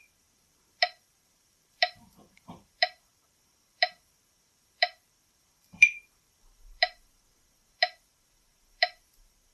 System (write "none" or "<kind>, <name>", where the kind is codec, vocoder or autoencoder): vocoder, BigVGAN v2